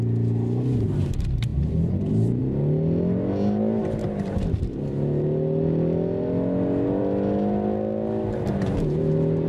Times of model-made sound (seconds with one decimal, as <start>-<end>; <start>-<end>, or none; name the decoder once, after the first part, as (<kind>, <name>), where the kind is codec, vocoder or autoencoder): none